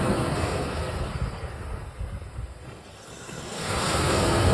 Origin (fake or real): fake